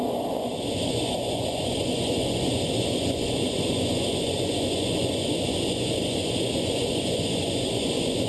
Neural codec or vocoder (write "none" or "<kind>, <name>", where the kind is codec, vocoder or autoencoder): vocoder, Vocos